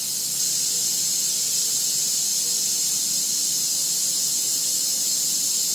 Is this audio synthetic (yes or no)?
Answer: no